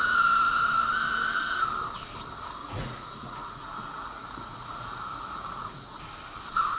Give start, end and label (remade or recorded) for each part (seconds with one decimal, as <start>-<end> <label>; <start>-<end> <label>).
0.0-2.6 recorded; 2.6-6.0 remade; 6.0-6.8 recorded